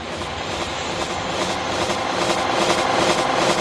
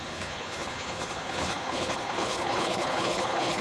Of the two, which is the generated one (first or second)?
second